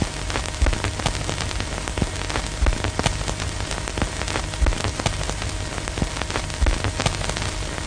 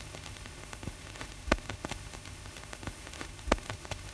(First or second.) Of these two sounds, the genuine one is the first